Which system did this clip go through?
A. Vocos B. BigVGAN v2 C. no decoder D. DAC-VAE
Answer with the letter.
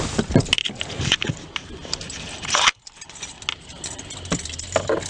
C